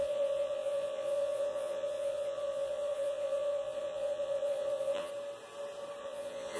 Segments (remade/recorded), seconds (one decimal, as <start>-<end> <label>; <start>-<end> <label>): 0.0-5.1 remade; 5.1-6.0 recorded; 6.0-6.6 remade